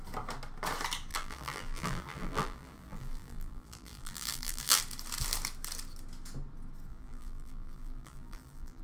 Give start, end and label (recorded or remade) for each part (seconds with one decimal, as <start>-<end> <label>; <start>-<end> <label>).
0.0-1.1 recorded; 1.1-4.8 remade; 4.8-6.9 recorded; 6.9-8.8 remade